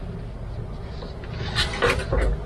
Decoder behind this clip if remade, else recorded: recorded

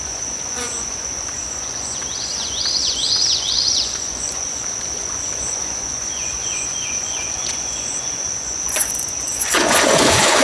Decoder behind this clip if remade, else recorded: remade, vocoder, Vocos